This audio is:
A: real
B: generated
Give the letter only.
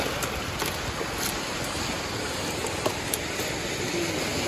A